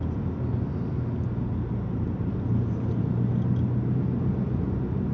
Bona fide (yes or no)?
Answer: yes